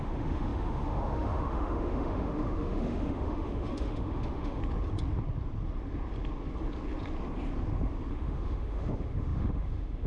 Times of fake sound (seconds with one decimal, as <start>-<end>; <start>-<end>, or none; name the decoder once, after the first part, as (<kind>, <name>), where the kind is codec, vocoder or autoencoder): 0.0-4.6 (autoencoder, DAC-VAE); 8.1-10.1